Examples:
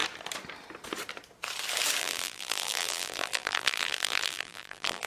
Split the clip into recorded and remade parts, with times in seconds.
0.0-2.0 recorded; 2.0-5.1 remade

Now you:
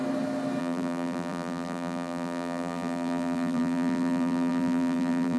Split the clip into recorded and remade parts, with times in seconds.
0.0-0.6 recorded; 0.6-5.4 remade

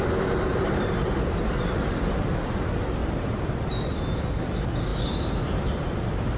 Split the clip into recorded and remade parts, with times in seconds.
0.0-0.5 recorded; 0.5-1.1 remade; 1.1-3.0 recorded; 3.0-3.7 remade; 3.7-4.9 recorded; 4.9-5.4 remade; 5.4-6.4 recorded

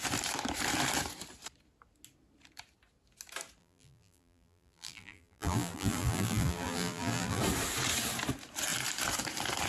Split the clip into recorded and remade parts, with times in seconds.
0.0-3.6 recorded; 3.6-7.4 remade; 7.4-9.7 recorded

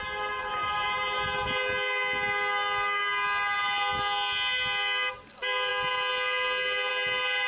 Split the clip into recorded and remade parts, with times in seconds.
0.0-7.5 recorded

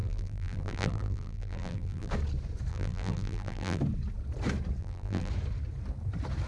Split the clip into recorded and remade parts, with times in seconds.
0.0-2.1 remade; 2.1-2.7 recorded; 2.7-3.8 remade; 3.8-4.8 recorded; 4.8-5.3 remade; 5.3-6.5 recorded